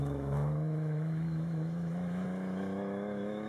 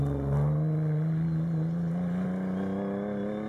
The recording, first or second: second